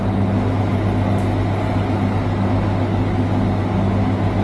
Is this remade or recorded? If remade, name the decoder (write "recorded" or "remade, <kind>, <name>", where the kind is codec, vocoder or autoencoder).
recorded